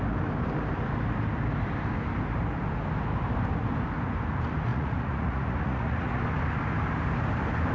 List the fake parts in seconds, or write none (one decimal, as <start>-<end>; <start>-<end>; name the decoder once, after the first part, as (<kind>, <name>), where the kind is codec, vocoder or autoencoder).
4.7-6.2 (vocoder, Vocos)